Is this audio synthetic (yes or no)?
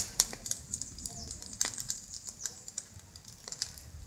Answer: yes